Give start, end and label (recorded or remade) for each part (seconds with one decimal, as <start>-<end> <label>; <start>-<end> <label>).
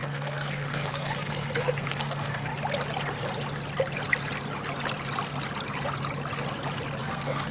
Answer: 0.0-2.5 remade; 2.5-7.0 recorded; 7.0-7.5 remade